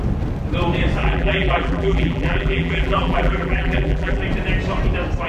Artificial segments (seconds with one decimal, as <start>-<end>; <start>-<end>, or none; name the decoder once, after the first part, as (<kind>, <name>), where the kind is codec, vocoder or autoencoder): 1.0-4.2 (vocoder, BigVGAN v2)